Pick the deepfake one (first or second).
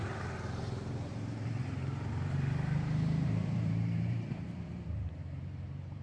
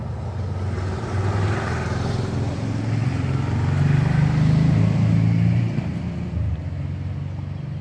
first